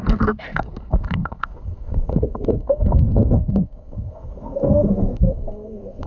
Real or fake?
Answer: fake